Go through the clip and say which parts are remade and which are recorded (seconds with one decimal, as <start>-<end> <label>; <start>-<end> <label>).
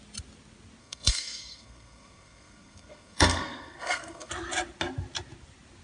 0.0-0.8 recorded; 0.8-4.3 remade; 4.3-5.8 recorded